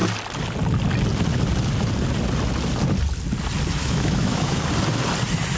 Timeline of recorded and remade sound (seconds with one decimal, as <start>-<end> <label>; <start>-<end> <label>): 0.0-3.8 recorded; 3.8-4.6 remade; 4.6-5.6 recorded